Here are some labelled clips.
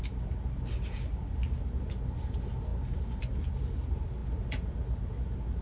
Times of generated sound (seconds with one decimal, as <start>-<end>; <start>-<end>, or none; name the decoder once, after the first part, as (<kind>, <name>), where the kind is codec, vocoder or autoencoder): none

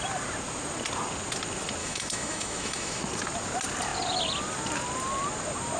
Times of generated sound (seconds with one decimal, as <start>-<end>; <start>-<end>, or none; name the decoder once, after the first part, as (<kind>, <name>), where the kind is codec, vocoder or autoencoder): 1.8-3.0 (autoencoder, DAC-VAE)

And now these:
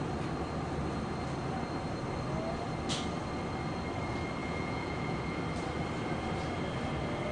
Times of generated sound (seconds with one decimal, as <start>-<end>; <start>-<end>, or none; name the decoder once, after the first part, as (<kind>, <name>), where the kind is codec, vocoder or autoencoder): 4.4-5.4 (vocoder, Vocos)

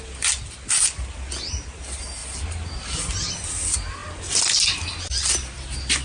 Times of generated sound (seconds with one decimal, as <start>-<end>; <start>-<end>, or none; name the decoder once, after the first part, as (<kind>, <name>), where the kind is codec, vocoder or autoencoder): none

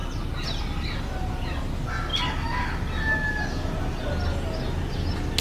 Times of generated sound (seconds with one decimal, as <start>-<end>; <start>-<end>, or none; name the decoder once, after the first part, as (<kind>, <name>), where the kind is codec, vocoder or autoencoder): none

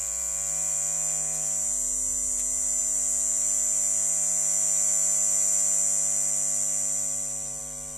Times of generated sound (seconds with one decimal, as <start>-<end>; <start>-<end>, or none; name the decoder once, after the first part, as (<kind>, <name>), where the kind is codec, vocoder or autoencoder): none